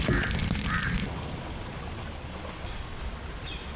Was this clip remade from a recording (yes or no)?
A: no